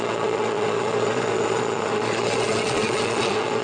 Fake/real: fake